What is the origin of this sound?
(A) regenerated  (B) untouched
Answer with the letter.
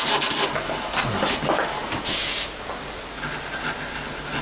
B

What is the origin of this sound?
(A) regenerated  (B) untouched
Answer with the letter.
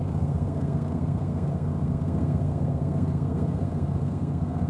A